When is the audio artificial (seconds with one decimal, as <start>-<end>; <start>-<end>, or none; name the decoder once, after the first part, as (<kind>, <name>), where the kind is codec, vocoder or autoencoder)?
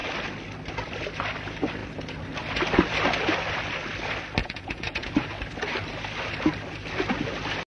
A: 4.4-5.1 (vocoder, Vocos)